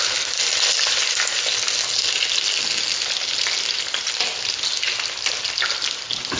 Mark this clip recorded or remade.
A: recorded